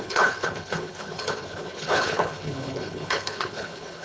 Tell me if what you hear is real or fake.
fake